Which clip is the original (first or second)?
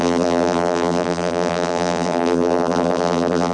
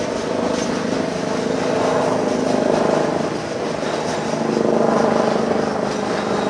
second